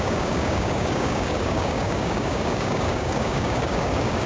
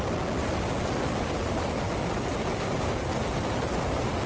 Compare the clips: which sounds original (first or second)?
second